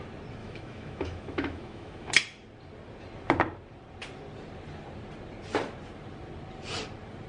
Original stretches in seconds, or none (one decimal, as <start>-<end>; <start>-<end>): 0.0-0.4; 2.1-7.3